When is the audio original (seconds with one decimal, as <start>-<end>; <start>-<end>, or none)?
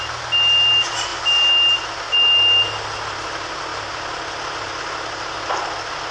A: 0.0-6.1